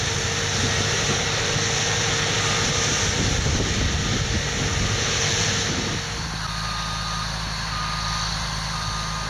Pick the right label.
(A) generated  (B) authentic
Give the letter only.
B